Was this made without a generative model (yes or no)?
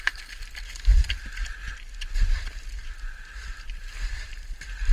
yes